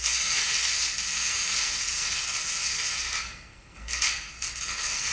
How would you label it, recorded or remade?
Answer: remade